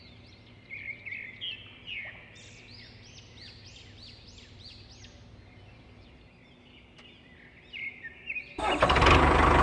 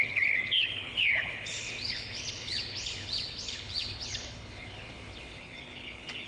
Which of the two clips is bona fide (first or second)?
first